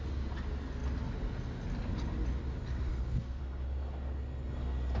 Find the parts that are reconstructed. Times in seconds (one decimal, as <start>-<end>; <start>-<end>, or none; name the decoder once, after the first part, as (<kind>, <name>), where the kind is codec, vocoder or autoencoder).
2.9-3.4 (codec, SNAC)